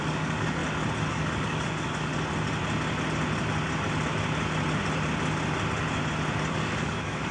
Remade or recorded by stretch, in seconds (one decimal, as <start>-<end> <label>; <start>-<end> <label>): 0.0-0.6 remade; 0.6-1.1 recorded; 1.1-2.1 remade; 2.1-6.5 recorded; 6.5-7.3 remade